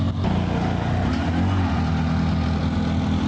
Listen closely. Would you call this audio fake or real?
real